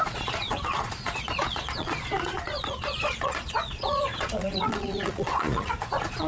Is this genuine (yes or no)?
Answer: no